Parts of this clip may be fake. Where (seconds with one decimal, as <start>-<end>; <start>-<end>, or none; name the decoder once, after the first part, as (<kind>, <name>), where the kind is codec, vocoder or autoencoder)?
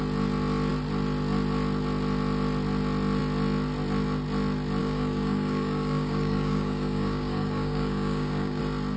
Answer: 4.8-8.6 (codec, DAC)